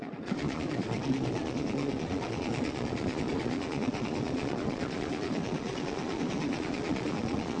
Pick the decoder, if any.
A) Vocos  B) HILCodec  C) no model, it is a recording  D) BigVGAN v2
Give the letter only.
A